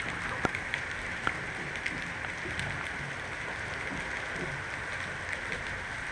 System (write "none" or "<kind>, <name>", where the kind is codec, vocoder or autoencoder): none